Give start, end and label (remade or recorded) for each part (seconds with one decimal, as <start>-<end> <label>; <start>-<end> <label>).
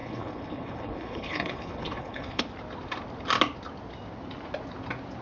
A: 0.0-2.4 remade; 2.4-5.2 recorded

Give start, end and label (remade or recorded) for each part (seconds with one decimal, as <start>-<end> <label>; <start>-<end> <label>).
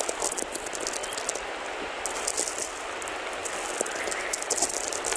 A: 0.0-5.2 recorded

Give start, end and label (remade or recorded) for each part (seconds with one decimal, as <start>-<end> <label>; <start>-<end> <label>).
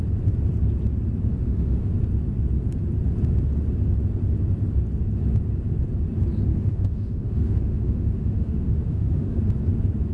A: 0.0-1.3 recorded; 1.3-1.9 remade; 1.9-6.5 recorded; 6.5-9.4 remade; 9.4-10.1 recorded